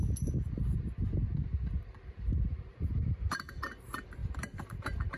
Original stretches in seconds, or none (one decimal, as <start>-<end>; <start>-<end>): 0.0-1.5; 3.2-4.2